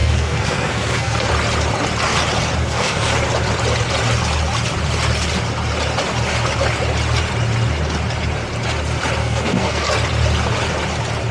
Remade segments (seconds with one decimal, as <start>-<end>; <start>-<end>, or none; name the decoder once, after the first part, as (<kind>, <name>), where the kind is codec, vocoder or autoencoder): 0.0-1.3 (codec, SNAC); 2.6-3.1; 9.2-9.9